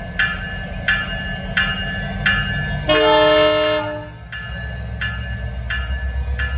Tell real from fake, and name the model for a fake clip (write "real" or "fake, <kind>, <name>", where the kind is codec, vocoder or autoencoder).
real